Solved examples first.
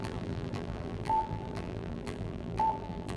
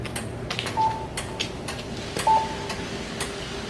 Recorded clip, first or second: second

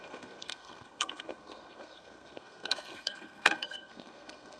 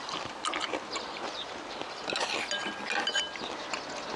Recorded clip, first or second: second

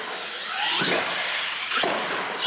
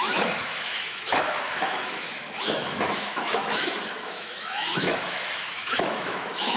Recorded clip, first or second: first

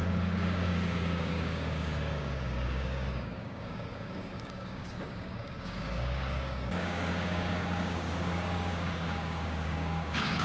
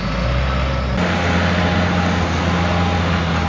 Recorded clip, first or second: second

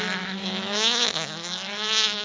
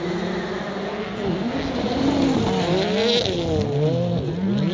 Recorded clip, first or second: second